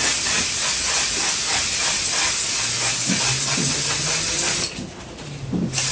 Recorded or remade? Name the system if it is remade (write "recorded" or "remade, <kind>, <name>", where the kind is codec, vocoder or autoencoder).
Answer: recorded